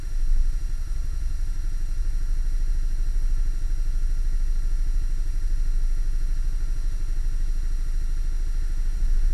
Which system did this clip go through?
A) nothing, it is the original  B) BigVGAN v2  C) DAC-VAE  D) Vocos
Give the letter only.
A